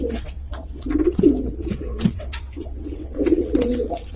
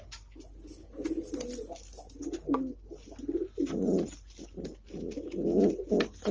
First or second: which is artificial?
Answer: first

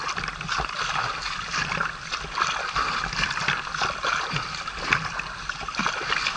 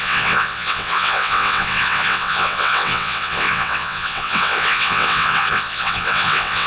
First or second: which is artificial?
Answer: second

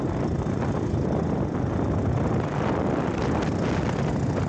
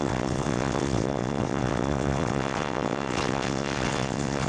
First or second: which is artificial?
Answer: second